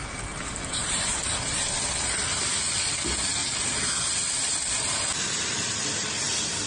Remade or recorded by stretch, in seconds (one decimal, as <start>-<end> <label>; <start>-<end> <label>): 0.0-1.6 remade; 1.6-6.7 recorded